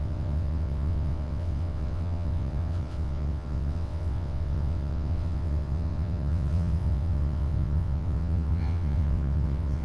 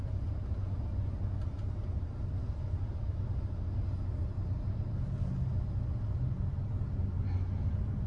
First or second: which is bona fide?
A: second